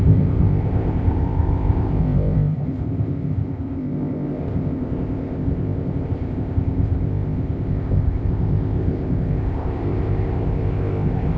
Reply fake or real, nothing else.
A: fake